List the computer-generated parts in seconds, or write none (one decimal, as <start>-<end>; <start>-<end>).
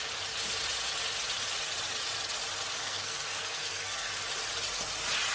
2.8-4.1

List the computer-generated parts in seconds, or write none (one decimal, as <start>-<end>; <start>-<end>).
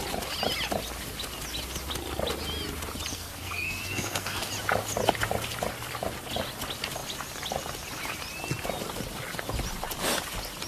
3.1-4.5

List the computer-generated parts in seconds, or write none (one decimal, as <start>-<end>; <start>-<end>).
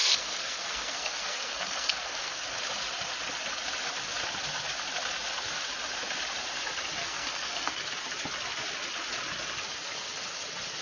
0.0-2.5; 7.0-7.8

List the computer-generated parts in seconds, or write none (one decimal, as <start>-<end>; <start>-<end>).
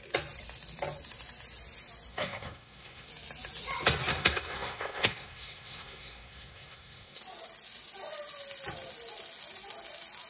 2.1-3.1; 4.1-7.2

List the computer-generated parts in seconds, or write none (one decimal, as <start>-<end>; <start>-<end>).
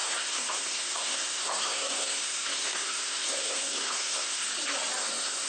0.0-4.5; 5.0-5.5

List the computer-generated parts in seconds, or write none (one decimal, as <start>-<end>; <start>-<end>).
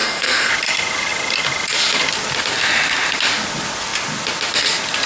0.0-0.5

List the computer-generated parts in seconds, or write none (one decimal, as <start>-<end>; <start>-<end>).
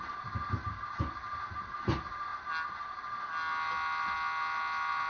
none